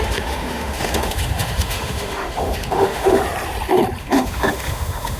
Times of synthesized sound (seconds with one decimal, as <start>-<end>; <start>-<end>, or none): 0.0-3.2; 4.0-5.2